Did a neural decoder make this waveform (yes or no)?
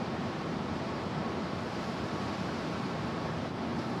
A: yes